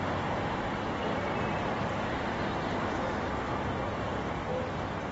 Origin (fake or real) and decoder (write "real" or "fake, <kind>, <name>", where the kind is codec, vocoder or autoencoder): real